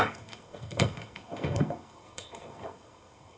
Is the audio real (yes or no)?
no